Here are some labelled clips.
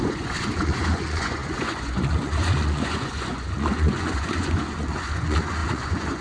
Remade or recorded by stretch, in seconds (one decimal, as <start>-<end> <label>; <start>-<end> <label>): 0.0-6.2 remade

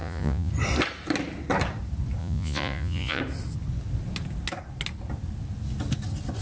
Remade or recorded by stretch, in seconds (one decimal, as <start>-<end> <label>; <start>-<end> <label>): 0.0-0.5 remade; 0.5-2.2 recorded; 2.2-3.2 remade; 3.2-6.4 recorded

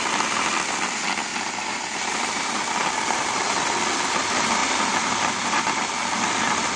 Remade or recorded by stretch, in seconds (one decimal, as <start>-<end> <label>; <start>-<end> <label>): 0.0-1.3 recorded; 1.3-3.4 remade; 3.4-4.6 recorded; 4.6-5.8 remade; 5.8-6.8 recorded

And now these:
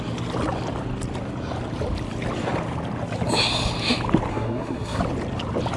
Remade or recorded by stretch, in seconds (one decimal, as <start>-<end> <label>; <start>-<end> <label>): 0.0-4.3 recorded; 4.3-5.0 remade; 5.0-5.8 recorded

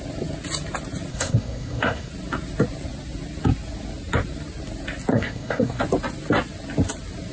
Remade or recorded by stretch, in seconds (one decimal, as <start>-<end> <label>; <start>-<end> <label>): 0.0-1.1 recorded; 1.1-2.1 remade; 2.1-5.1 recorded; 5.1-5.8 remade; 5.8-7.3 recorded

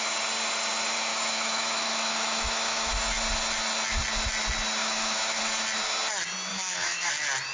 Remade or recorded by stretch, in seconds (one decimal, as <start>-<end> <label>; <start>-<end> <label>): 0.0-1.1 recorded; 1.1-2.9 remade; 2.9-4.8 recorded; 4.8-5.4 remade; 5.4-6.5 recorded; 6.5-7.1 remade; 7.1-7.5 recorded

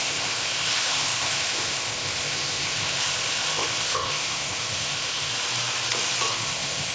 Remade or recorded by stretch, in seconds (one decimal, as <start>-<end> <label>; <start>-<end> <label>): 0.0-5.3 remade; 5.3-6.3 recorded; 6.3-6.9 remade